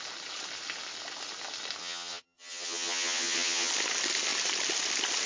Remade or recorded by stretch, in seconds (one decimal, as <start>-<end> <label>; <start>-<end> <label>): 0.0-1.8 recorded; 1.8-3.7 remade; 3.7-5.3 recorded